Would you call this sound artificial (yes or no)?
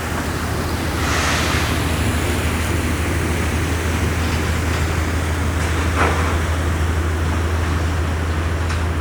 no